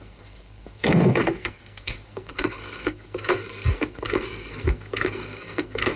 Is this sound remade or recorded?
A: remade